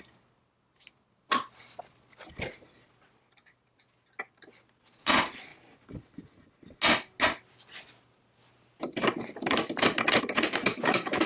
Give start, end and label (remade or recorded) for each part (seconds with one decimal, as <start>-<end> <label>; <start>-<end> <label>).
0.0-10.7 recorded; 10.7-11.3 remade